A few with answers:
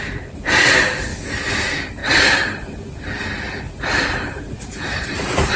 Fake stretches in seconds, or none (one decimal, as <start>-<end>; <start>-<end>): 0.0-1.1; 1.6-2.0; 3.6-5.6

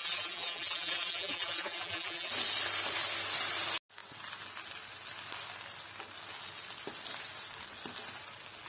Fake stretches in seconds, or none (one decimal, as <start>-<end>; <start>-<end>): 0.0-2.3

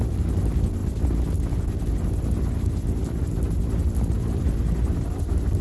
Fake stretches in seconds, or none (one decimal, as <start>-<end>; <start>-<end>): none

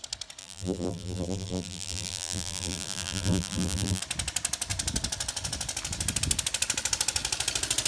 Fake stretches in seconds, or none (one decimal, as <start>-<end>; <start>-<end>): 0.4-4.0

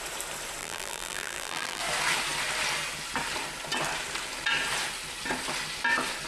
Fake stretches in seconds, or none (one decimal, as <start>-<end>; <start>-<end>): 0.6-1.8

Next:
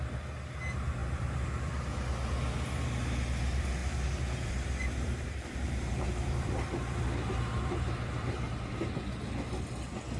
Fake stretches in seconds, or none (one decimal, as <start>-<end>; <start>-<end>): 1.0-1.8; 3.8-8.6